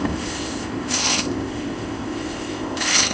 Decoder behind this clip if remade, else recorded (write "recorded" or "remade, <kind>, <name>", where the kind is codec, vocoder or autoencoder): remade, codec, ZipCodec